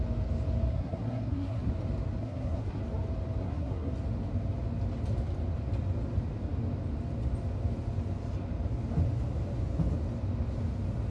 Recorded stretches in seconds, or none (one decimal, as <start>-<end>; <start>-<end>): 0.0-0.7; 1.7-2.2; 2.8-3.4; 3.9-11.1